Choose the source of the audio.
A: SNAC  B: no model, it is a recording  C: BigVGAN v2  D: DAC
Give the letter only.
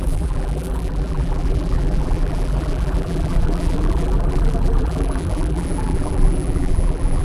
C